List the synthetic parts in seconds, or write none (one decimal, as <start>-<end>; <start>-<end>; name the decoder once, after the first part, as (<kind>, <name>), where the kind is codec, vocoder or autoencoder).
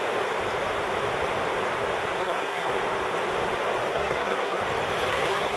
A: 2.2-2.8 (codec, SNAC); 3.9-4.6; 5.1-5.6